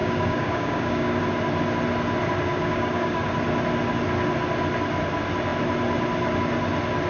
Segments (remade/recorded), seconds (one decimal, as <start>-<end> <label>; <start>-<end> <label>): 0.0-1.2 remade; 1.2-2.5 recorded; 2.5-3.2 remade; 3.2-7.1 recorded